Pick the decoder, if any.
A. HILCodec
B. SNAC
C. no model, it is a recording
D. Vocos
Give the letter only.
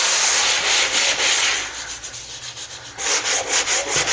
C